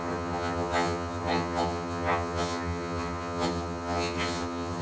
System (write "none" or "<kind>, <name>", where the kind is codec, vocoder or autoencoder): vocoder, HiFi-GAN